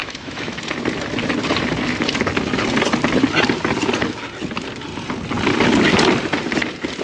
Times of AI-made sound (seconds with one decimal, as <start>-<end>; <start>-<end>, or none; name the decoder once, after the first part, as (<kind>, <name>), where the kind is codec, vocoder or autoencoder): 0.0-0.6 (autoencoder, DAC-VAE)